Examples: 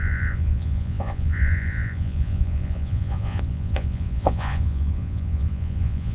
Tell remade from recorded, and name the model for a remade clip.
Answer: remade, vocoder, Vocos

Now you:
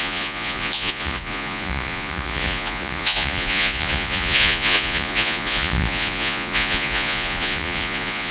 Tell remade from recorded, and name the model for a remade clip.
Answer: remade, vocoder, Vocos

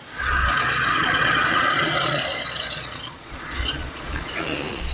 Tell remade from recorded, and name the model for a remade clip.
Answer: remade, vocoder, Vocos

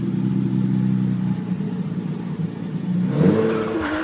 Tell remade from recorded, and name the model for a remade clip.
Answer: recorded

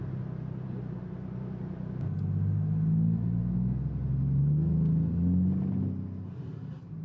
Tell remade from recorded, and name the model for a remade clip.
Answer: recorded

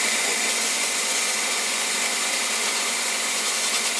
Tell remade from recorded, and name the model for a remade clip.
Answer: remade, vocoder, Vocos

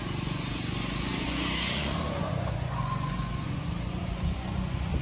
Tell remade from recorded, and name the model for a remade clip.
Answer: remade, vocoder, Vocos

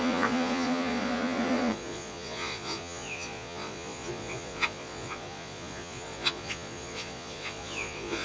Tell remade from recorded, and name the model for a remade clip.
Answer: remade, vocoder, Vocos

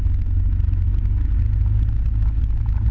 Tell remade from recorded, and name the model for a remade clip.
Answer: recorded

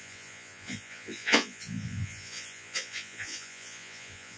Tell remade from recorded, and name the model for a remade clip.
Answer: remade, vocoder, Vocos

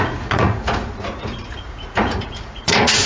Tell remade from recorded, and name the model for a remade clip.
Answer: remade, vocoder, Vocos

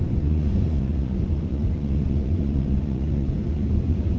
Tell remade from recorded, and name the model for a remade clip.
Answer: remade, vocoder, Vocos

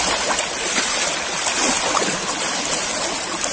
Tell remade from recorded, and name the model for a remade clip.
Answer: recorded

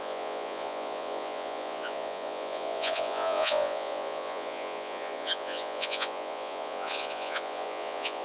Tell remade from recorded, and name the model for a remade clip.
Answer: remade, vocoder, Vocos